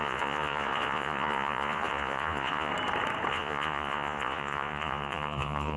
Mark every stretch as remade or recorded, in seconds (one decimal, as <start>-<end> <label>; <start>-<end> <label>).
0.0-2.7 remade; 2.7-3.3 recorded; 3.3-5.8 remade